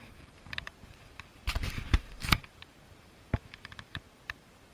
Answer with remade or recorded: remade